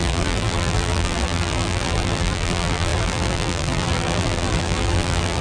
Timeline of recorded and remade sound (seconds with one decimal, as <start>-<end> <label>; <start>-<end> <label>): 0.0-5.4 remade